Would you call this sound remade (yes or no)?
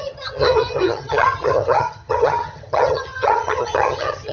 yes